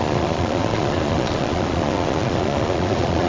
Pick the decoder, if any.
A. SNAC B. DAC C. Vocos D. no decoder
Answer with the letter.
C